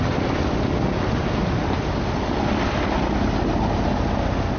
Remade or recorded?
recorded